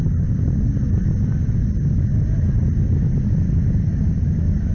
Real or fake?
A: real